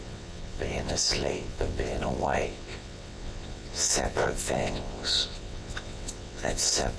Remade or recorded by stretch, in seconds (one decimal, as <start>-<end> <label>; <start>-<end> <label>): 0.0-7.0 remade